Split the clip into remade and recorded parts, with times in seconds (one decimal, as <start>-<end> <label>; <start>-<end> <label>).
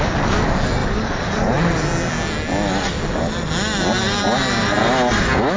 0.0-5.6 recorded